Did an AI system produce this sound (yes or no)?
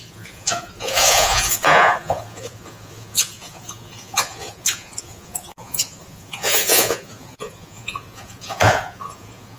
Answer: yes